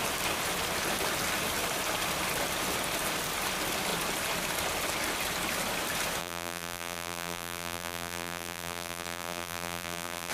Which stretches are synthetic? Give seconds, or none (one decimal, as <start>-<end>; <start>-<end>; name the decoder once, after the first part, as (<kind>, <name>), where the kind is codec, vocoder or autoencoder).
6.2-10.3 (vocoder, BigVGAN v2)